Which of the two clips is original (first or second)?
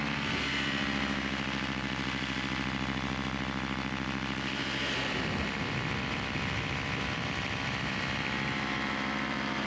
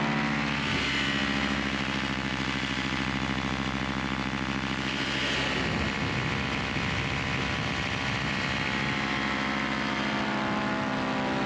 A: second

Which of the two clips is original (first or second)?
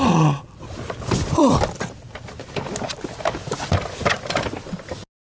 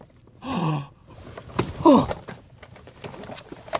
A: first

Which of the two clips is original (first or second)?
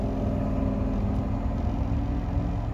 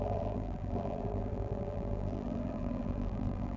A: first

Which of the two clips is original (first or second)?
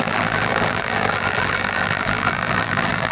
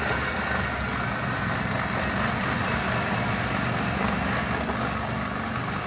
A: second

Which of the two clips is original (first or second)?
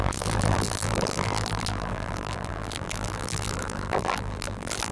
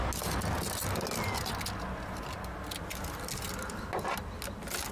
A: second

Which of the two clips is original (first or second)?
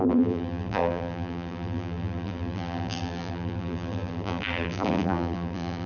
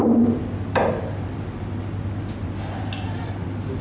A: second